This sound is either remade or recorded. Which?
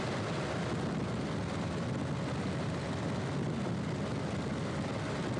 recorded